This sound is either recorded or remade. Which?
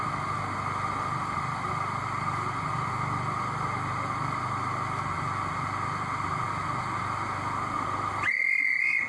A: recorded